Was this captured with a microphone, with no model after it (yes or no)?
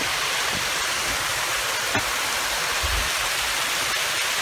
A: yes